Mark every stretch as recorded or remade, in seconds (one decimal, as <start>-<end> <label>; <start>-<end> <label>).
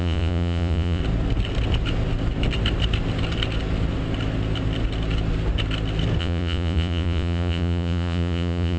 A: 0.0-1.0 remade; 1.0-6.2 recorded; 6.2-8.8 remade